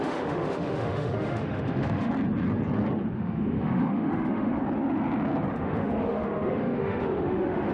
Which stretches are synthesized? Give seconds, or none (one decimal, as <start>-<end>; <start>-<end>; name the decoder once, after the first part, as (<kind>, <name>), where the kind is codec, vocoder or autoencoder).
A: 0.0-2.1 (autoencoder, DAC-VAE); 3.2-4.6; 5.5-7.7